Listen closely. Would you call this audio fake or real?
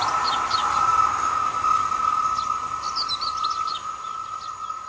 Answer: real